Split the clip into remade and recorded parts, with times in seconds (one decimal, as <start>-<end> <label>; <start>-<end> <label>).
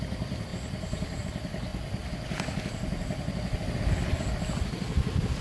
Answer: 0.0-5.4 recorded